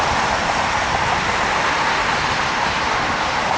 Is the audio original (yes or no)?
yes